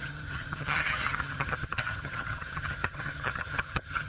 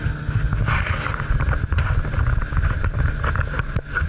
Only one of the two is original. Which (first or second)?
second